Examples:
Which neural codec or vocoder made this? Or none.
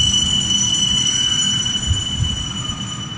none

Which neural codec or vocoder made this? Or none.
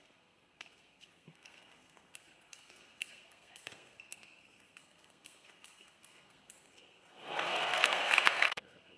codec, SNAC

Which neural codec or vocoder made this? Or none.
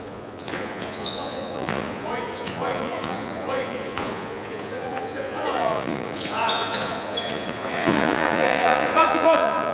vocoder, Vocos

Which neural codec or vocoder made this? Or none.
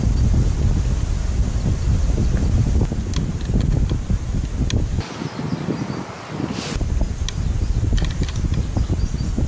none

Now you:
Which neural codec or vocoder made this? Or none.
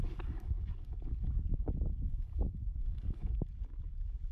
codec, DAC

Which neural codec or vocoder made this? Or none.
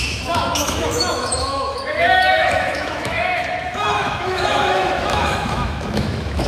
autoencoder, DAC-VAE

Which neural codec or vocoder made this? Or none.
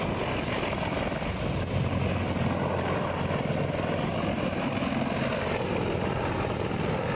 none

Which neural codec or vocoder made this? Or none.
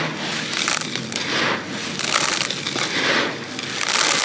none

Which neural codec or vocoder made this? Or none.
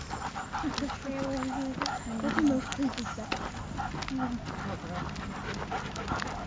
none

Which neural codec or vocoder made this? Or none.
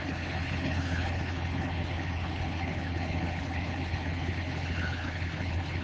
codec, HILCodec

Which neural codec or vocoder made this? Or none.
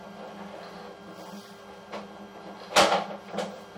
none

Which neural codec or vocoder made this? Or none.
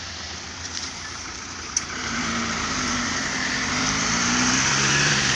vocoder, BigVGAN v2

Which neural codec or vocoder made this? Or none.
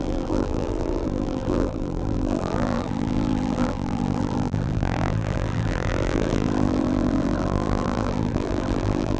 vocoder, BigVGAN v2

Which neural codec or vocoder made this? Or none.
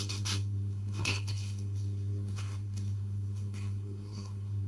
codec, SNAC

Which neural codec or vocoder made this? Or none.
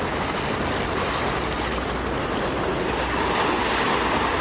none